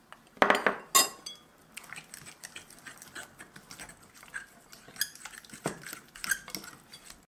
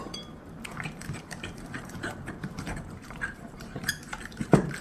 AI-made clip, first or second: second